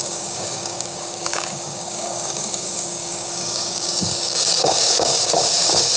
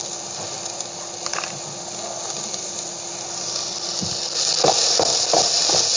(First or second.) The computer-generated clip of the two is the first